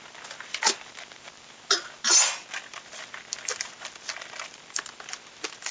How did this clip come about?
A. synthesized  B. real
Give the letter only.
B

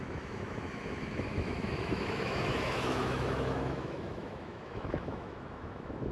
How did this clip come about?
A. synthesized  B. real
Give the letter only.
A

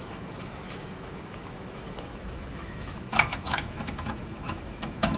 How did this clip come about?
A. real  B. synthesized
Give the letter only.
B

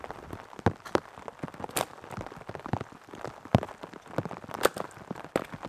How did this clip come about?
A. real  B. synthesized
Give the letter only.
A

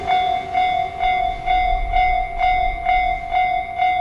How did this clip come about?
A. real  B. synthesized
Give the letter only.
A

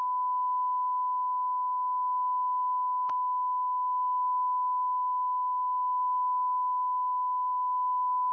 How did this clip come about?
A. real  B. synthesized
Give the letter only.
B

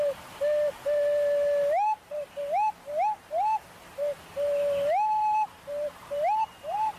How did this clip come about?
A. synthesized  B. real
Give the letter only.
B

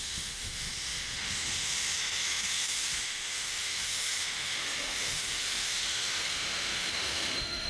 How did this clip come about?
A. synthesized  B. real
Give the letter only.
A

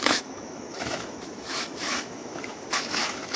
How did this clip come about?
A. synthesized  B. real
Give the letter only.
A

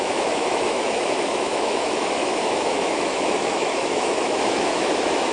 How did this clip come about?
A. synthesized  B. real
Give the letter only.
A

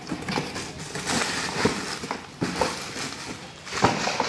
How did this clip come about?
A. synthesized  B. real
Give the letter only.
B